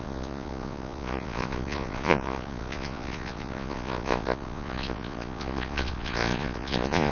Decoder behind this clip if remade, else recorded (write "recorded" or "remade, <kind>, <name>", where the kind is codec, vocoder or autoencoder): remade, vocoder, Vocos